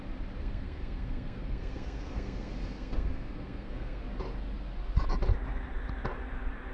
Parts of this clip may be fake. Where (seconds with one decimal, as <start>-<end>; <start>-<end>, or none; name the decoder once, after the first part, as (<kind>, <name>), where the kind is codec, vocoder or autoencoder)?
0.4-4.0 (codec, SNAC)